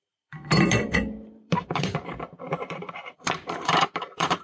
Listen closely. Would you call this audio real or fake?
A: fake